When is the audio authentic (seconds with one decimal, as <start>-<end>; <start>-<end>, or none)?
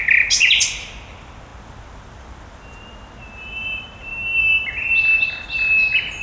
0.0-6.2